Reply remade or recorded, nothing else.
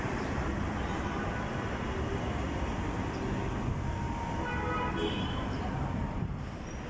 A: recorded